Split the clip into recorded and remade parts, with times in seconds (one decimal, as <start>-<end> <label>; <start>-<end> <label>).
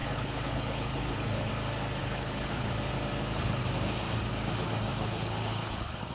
0.0-1.5 remade; 1.5-2.0 recorded; 2.0-2.7 remade; 2.7-4.9 recorded; 4.9-6.1 remade